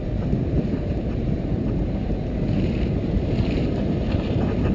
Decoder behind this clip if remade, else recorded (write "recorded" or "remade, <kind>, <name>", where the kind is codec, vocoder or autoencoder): remade, vocoder, BigVGAN v2